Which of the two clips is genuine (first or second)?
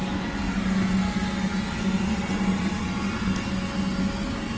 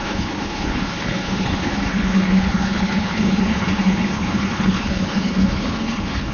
first